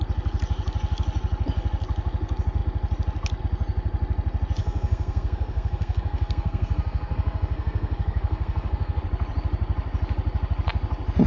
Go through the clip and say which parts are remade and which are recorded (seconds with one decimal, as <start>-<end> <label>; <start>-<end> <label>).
0.0-4.6 recorded; 4.6-9.0 remade; 9.0-11.3 recorded